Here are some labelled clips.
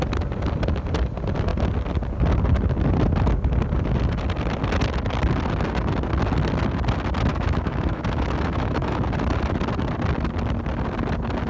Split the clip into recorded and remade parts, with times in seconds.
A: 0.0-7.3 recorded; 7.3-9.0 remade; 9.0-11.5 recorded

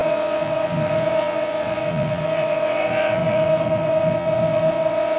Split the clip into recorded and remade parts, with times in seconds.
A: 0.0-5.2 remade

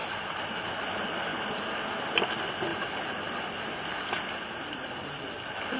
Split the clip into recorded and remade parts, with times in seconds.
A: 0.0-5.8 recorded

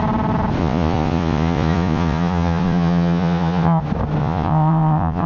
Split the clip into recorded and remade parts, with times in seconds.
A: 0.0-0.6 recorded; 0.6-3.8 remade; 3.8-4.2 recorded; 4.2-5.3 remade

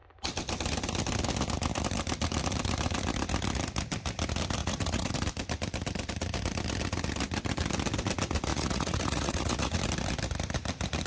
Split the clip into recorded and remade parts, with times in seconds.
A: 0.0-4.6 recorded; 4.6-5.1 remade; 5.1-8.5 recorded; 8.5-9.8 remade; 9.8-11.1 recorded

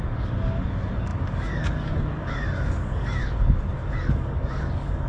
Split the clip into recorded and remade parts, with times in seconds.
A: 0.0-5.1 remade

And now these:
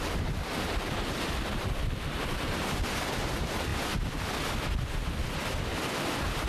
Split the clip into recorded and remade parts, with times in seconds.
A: 0.0-1.8 recorded; 1.8-3.1 remade; 3.1-6.5 recorded

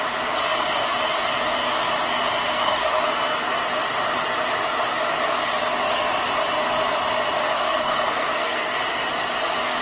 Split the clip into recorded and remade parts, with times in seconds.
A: 0.0-2.5 recorded; 2.5-3.0 remade; 3.0-7.4 recorded; 7.4-8.8 remade; 8.8-9.8 recorded